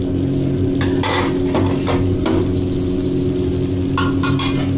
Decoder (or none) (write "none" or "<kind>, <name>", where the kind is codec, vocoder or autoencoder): none